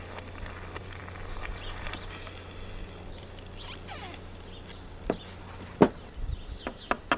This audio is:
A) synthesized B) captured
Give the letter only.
B